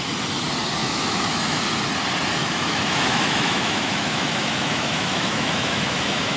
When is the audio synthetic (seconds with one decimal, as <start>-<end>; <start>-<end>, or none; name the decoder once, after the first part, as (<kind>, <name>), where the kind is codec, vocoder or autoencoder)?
0.8-1.6 (autoencoder, DAC-VAE); 2.4-6.4